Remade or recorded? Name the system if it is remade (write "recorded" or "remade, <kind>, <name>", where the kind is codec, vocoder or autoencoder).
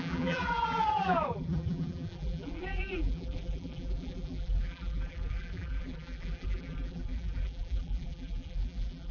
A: remade, vocoder, BigVGAN v2